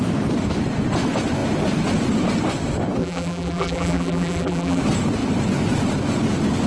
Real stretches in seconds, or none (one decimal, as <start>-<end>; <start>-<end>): 0.0-3.0; 4.8-6.7